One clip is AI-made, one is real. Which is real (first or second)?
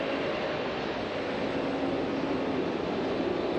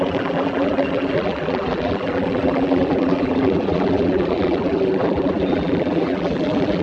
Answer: first